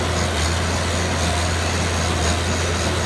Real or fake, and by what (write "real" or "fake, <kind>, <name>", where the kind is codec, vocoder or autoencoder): real